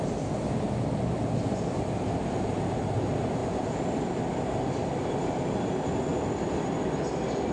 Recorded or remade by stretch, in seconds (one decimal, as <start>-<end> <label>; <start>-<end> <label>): 0.0-7.5 recorded